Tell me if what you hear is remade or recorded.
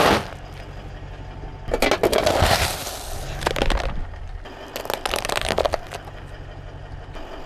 recorded